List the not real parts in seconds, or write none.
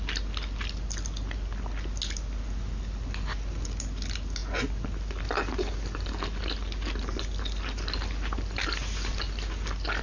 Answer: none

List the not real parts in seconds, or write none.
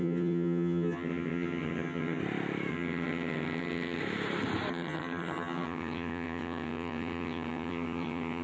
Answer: 0.0-2.2 (vocoder, HiFi-GAN); 2.7-4.0; 4.7-8.4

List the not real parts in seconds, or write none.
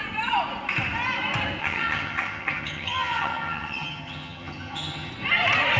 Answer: 1.6-5.1 (vocoder, HiFi-GAN)